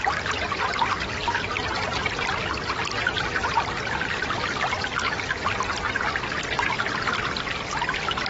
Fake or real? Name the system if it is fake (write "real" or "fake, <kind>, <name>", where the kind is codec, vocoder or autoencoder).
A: real